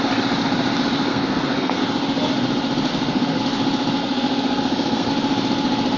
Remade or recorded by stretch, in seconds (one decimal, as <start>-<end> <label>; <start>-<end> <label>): 0.0-1.1 recorded; 1.1-1.8 remade; 1.8-2.9 recorded; 2.9-3.4 remade; 3.4-4.0 recorded; 4.0-5.1 remade; 5.1-6.0 recorded